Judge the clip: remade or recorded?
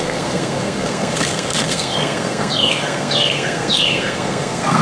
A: remade